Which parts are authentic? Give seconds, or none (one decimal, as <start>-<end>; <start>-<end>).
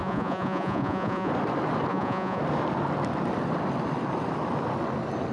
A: 1.3-1.9; 2.4-5.3